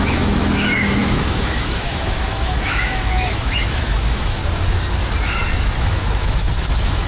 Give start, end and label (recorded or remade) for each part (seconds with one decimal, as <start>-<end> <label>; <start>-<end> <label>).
0.0-4.4 remade; 4.4-5.8 recorded; 5.8-7.1 remade